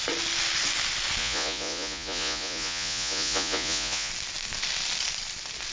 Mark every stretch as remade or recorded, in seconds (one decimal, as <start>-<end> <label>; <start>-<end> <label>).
0.0-1.2 recorded; 1.2-4.1 remade; 4.1-5.7 recorded